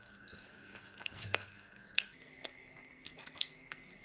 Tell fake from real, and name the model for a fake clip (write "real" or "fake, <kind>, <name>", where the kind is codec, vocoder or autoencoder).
fake, codec, SNAC